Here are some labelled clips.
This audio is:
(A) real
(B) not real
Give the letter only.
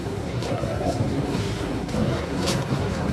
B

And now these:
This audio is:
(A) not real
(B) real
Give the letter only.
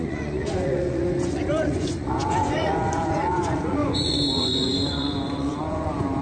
A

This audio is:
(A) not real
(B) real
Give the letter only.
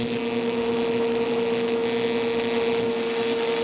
B